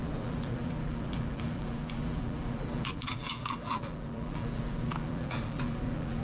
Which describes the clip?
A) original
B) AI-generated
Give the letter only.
B